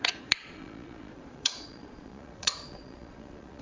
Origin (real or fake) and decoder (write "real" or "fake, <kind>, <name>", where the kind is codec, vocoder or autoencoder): fake, vocoder, Vocos